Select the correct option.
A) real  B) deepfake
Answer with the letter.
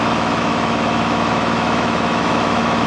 B